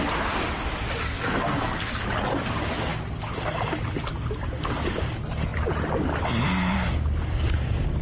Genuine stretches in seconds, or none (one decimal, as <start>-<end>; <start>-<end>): 0.0-1.1; 1.9-8.0